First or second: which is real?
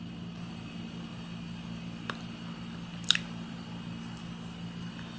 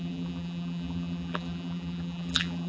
first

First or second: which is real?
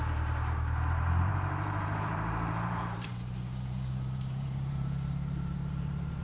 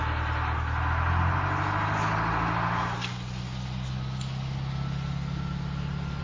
second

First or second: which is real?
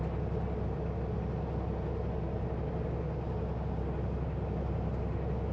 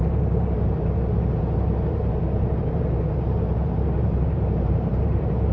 first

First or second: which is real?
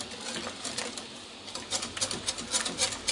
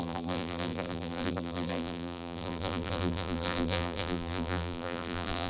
first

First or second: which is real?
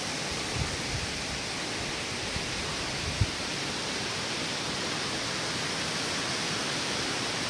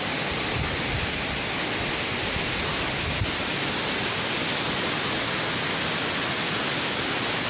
second